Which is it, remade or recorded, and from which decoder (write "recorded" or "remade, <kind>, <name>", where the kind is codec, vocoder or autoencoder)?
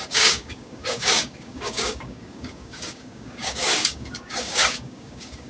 remade, codec, DAC